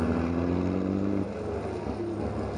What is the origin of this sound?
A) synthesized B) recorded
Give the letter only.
B